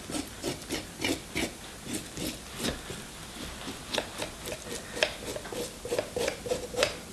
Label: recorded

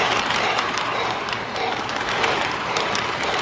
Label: remade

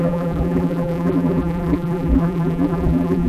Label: remade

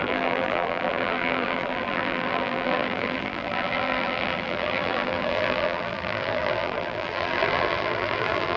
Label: remade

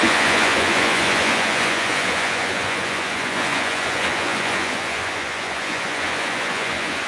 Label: remade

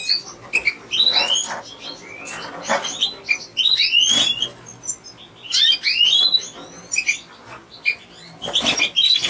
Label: recorded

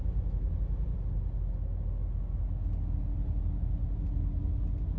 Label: recorded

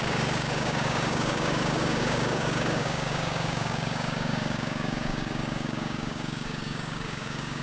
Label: remade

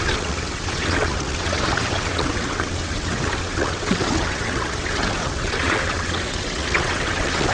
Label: remade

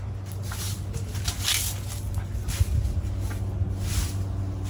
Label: recorded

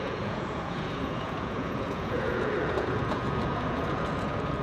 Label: remade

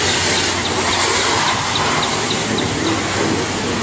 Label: recorded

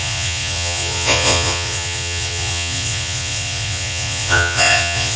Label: remade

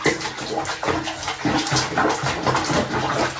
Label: recorded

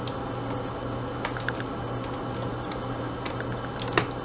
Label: recorded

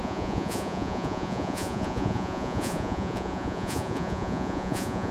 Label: remade